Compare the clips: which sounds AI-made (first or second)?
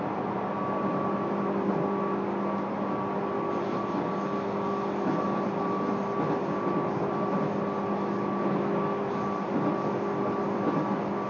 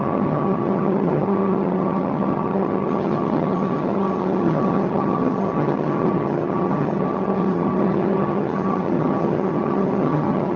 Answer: second